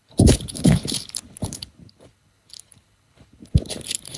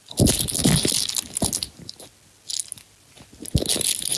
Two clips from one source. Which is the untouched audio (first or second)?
second